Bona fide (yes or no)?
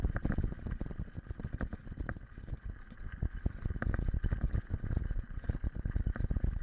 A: yes